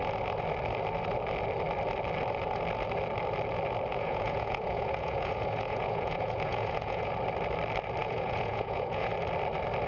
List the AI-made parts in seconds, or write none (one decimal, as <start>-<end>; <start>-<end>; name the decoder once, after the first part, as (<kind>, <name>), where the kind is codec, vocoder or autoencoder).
3.9-7.1 (vocoder, Vocos); 8.0-9.1